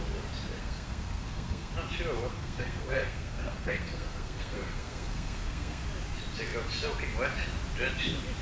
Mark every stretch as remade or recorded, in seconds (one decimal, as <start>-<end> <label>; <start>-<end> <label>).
0.0-0.6 recorded; 0.6-1.7 remade; 1.7-2.3 recorded; 2.3-5.8 remade; 5.8-8.4 recorded